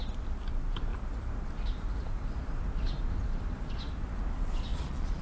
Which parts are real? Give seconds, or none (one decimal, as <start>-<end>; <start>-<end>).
0.0-4.7